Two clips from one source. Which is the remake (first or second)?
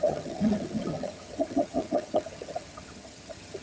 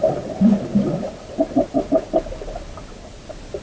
first